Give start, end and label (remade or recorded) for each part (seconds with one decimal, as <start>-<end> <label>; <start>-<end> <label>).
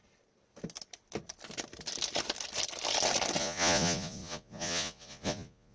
0.0-3.4 recorded; 3.4-5.7 remade